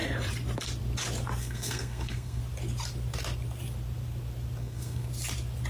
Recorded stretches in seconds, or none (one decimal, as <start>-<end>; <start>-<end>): 0.0-1.4; 2.4-4.6; 5.1-5.7

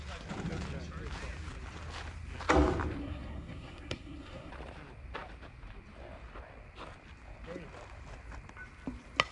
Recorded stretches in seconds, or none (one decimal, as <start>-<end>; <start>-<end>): 0.0-3.0; 4.5-9.3

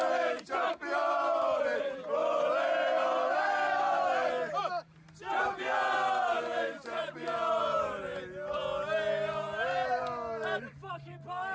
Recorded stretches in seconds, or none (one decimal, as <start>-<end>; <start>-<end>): 0.0-11.5

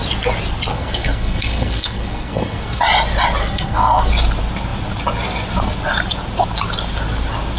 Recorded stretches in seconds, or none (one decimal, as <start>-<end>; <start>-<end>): 0.0-0.7; 2.8-3.4; 4.1-7.6

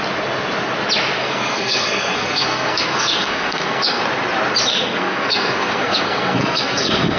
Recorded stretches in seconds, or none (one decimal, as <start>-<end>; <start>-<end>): 0.0-1.2; 4.0-4.7